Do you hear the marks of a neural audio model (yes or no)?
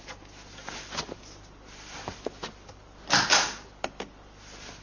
no